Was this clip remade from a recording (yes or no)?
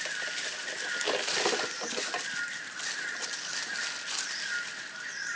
no